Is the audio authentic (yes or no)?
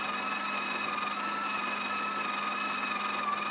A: yes